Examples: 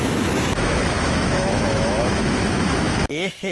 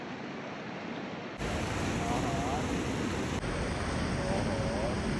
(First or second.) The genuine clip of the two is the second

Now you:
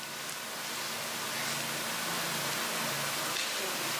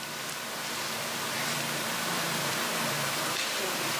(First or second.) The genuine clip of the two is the first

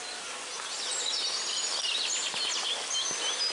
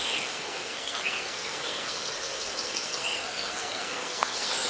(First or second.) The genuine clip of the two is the first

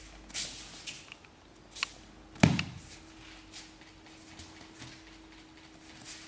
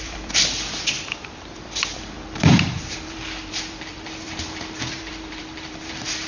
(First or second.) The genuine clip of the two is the first